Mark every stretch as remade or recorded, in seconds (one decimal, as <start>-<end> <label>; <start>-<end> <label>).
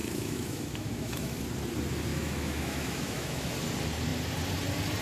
0.0-1.4 remade; 1.4-2.1 recorded; 2.1-3.5 remade; 3.5-5.0 recorded